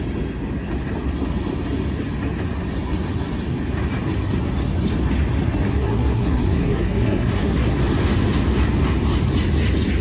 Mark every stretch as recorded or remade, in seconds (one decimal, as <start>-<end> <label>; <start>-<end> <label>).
0.0-5.7 recorded; 5.7-7.8 remade; 7.8-10.0 recorded

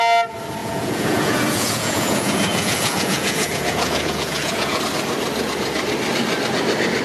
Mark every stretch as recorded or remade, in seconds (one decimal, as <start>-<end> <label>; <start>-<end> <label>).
0.0-0.6 recorded; 0.6-4.8 remade; 4.8-7.0 recorded